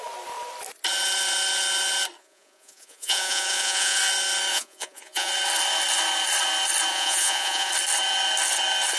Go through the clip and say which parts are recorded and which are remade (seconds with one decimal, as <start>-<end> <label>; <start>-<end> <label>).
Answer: 0.0-2.2 recorded; 2.2-4.0 remade; 4.0-4.5 recorded; 4.5-5.3 remade; 5.3-6.9 recorded; 6.9-7.7 remade; 7.7-9.0 recorded

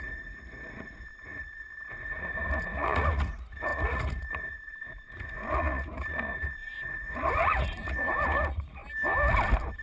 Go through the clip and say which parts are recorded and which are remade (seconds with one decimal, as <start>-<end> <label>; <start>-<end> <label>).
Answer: 0.0-8.8 remade; 8.8-9.8 recorded

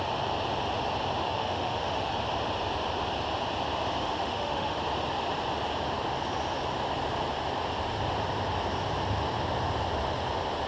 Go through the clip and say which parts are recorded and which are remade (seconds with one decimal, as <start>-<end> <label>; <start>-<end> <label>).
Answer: 0.0-1.2 recorded; 1.2-2.1 remade; 2.1-4.0 recorded; 4.0-4.8 remade; 4.8-10.7 recorded

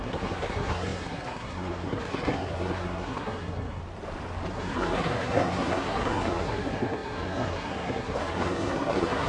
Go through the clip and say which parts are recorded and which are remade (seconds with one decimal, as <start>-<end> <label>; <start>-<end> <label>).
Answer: 0.0-3.8 remade; 3.8-4.5 recorded; 4.5-9.3 remade

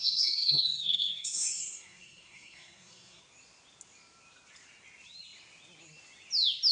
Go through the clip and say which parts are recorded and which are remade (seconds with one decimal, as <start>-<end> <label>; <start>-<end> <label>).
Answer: 0.0-3.2 remade; 3.2-6.7 recorded